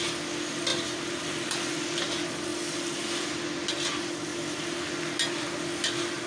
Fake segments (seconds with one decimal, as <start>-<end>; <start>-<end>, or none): none